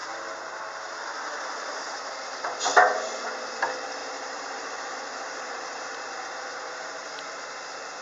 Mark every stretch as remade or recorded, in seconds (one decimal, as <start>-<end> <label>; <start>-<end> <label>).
0.0-4.0 recorded; 4.0-7.1 remade; 7.1-8.0 recorded